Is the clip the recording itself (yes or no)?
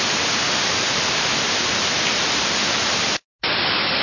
yes